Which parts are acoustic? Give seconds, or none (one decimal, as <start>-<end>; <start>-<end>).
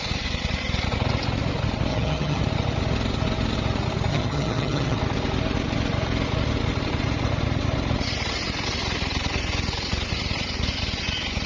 0.0-1.9; 2.4-4.1; 5.0-11.5